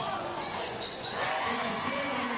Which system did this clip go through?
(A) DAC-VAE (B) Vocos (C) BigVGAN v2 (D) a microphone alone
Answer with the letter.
B